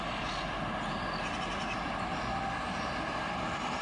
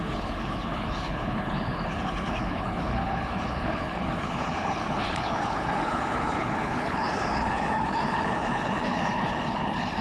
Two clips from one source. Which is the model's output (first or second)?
second